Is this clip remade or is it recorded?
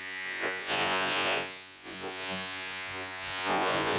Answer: remade